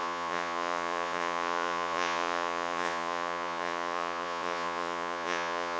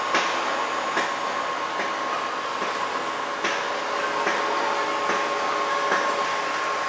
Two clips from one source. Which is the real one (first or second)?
second